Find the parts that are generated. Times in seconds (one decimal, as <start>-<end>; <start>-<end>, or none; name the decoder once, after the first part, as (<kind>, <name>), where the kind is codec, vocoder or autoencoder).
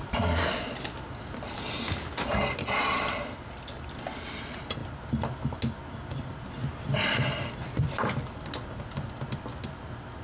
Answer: none